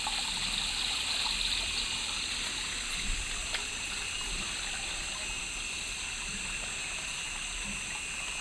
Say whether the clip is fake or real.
real